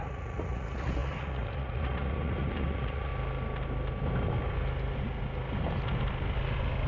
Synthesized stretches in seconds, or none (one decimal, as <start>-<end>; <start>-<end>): 0.0-3.1